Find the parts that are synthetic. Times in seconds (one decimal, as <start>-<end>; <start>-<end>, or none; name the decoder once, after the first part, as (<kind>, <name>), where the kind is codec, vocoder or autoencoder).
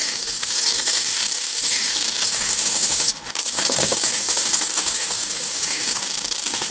0.0-6.7 (codec, DAC)